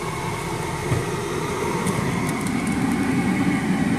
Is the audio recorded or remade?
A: recorded